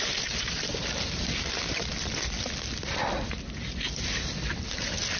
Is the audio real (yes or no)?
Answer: yes